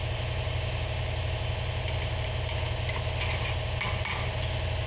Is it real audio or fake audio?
real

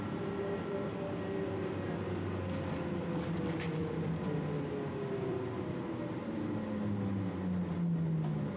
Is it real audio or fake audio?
real